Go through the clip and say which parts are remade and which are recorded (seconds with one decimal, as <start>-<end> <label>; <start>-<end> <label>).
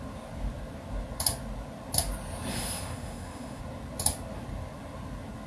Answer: 0.0-2.5 recorded; 2.5-3.6 remade; 3.6-5.5 recorded